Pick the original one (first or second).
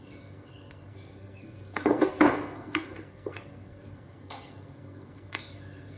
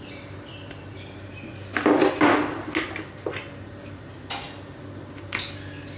second